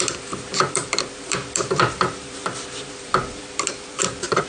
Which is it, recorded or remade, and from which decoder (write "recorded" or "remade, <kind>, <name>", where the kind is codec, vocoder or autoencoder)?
remade, vocoder, BigVGAN v2